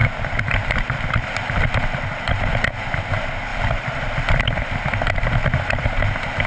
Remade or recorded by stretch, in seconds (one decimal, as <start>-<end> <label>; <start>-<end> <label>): 0.0-3.5 recorded; 3.5-4.4 remade; 4.4-6.5 recorded